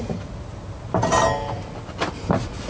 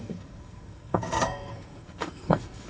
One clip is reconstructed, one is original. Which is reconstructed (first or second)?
second